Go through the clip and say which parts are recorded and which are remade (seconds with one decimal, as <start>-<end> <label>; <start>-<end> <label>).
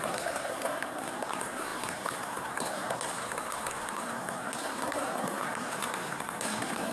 0.0-6.9 remade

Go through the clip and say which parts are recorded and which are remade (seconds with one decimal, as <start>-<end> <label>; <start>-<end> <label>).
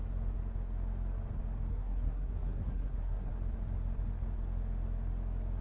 0.0-1.7 recorded; 1.7-3.3 remade; 3.3-5.6 recorded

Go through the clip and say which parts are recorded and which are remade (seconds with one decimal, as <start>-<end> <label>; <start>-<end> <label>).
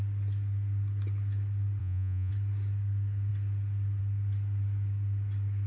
0.0-1.8 recorded; 1.8-2.3 remade; 2.3-5.7 recorded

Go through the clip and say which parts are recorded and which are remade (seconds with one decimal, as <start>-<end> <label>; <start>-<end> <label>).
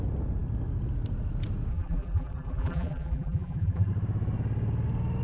0.0-1.7 recorded; 1.7-3.9 remade; 3.9-5.2 recorded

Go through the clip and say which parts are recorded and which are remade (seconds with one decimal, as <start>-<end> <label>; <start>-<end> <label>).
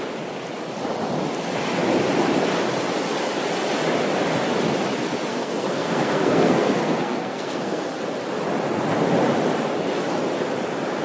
0.0-5.3 recorded; 5.3-7.9 remade; 7.9-11.0 recorded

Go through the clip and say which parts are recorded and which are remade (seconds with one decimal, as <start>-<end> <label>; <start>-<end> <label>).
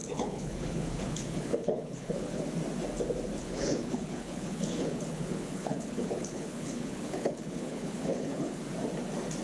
0.0-2.4 remade; 2.4-3.4 recorded; 3.4-8.6 remade; 8.6-9.4 recorded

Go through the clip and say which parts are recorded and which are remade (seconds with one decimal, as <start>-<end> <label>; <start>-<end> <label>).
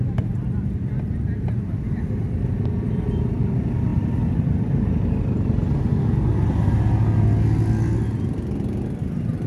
0.0-9.5 recorded